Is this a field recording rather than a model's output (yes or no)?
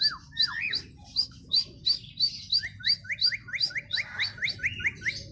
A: yes